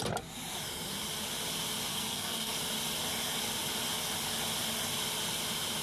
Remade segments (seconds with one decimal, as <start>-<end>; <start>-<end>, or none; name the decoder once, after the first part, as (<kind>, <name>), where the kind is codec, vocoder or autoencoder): 1.9-2.5 (codec, SNAC)